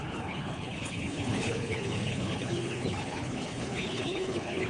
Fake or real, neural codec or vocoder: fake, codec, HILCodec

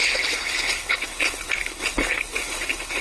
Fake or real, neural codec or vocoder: fake, codec, HILCodec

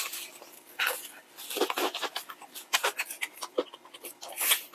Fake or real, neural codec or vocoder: real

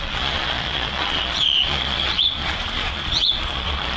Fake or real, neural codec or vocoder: fake, vocoder, Vocos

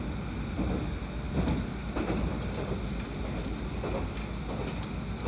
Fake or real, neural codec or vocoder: real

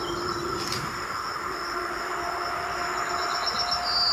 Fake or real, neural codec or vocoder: real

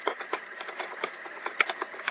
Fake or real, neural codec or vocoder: fake, vocoder, HiFi-GAN